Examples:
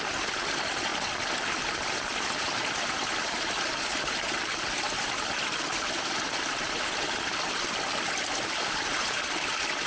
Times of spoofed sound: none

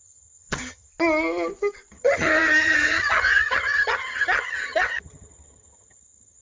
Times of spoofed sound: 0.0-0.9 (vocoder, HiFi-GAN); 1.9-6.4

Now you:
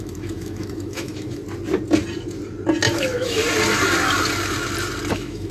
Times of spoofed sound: 0.0-1.4 (autoencoder, DAC-VAE); 3.0-3.4; 5.1-5.5